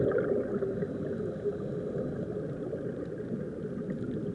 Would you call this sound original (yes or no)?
yes